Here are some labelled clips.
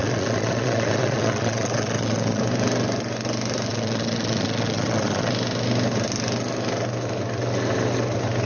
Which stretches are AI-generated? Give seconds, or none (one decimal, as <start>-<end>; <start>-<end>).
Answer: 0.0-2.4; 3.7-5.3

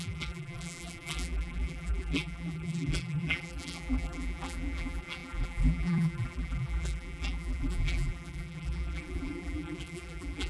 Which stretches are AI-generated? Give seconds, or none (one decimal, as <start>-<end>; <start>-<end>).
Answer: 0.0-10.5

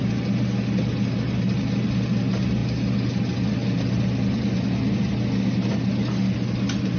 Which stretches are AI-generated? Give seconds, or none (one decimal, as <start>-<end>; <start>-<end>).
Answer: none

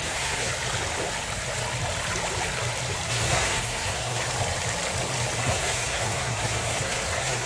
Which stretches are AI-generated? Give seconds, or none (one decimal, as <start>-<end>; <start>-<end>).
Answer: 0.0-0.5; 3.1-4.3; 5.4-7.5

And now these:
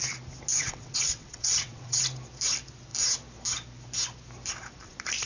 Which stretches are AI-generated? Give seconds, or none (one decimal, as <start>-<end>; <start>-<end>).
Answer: 0.5-2.0

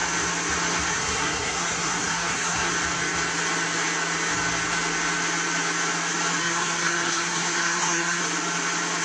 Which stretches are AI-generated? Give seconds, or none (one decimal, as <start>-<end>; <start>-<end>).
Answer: 0.9-2.7; 6.4-8.2

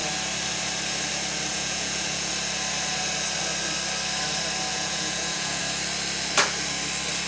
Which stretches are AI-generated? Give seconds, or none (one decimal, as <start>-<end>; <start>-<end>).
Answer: 1.5-2.3; 4.7-5.6

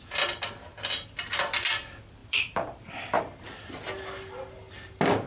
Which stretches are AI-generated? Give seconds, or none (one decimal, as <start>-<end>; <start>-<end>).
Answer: 2.2-3.2